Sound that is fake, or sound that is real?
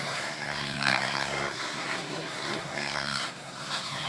fake